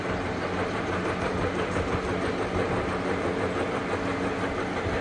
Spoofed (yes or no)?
no